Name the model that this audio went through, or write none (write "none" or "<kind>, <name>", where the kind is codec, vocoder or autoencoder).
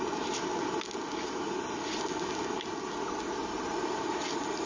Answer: none